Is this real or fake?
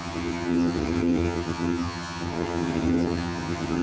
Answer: fake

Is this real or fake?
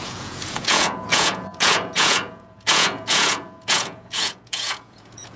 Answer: fake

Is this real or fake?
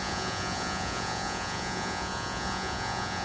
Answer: fake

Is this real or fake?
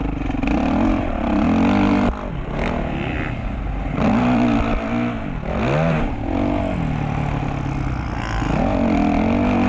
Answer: real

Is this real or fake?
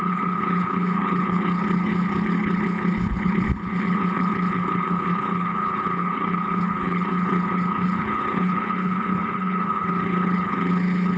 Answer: fake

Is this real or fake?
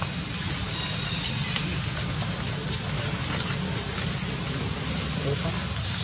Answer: real